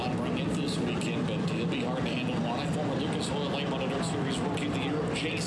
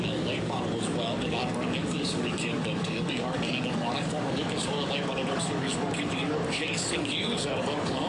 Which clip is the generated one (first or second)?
second